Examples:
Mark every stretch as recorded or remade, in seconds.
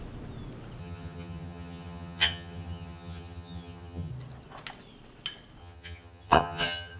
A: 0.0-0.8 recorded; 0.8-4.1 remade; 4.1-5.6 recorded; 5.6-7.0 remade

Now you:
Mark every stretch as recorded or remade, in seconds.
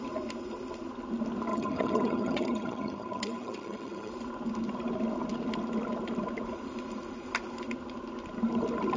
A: 0.0-1.5 recorded; 1.5-4.1 remade; 4.1-9.0 recorded